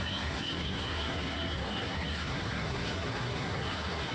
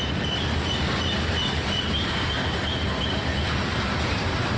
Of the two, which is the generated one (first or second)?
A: first